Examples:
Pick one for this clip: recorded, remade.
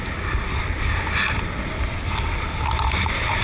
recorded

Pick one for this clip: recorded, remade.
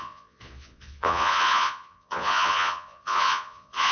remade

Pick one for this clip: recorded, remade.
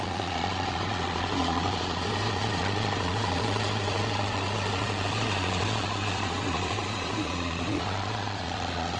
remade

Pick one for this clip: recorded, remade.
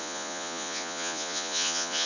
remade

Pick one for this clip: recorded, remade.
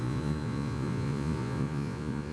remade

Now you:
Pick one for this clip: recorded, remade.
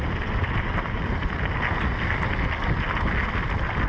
recorded